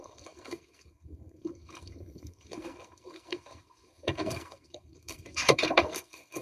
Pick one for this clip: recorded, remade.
remade